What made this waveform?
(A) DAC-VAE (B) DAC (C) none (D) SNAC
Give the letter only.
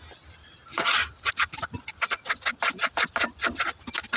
C